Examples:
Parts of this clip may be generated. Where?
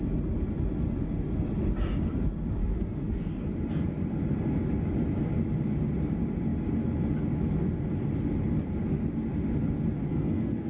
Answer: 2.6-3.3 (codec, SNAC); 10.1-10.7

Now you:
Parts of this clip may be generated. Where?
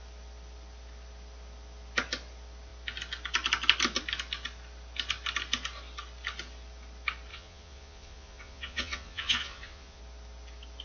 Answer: 7.3-10.0 (vocoder, Vocos)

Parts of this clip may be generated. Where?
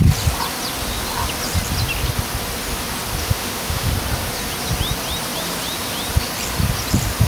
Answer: 3.2-3.9 (autoencoder, DAC-VAE)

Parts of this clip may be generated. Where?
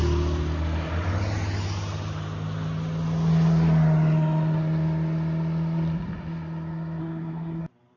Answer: 7.0-7.6 (codec, SNAC)